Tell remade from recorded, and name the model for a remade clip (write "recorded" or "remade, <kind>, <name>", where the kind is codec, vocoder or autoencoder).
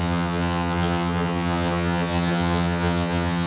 remade, vocoder, HiFi-GAN